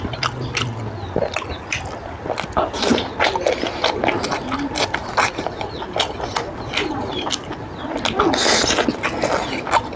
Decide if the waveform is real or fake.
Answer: real